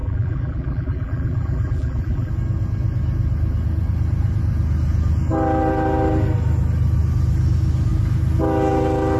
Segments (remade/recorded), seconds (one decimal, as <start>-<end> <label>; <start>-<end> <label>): 0.0-2.3 remade; 2.3-9.2 recorded